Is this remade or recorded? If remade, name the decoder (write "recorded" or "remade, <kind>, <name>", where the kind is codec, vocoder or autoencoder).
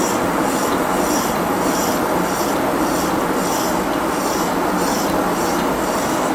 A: recorded